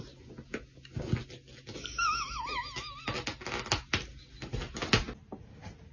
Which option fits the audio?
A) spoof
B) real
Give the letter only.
B